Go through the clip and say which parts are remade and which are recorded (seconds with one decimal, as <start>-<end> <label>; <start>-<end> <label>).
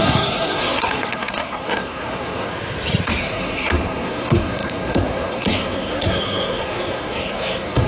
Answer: 0.0-2.5 remade; 2.5-3.2 recorded; 3.2-7.9 remade